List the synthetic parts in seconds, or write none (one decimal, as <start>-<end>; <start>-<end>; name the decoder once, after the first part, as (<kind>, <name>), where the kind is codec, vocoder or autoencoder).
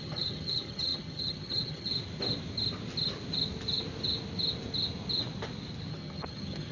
0.0-1.9 (vocoder, HiFi-GAN); 5.9-6.7